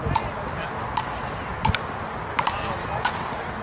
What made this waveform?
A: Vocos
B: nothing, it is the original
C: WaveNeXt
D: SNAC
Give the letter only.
B